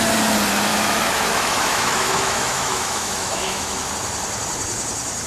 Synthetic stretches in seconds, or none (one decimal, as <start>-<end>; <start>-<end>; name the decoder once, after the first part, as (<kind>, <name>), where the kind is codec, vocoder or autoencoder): 0.7-3.9 (autoencoder, DAC-VAE)